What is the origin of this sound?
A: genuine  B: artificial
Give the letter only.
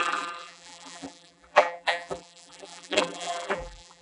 B